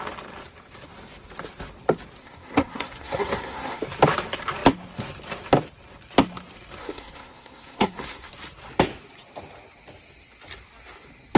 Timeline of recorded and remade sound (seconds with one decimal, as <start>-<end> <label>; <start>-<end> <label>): 0.0-2.2 recorded; 2.2-3.8 remade; 3.8-6.8 recorded; 6.8-8.3 remade; 8.3-11.4 recorded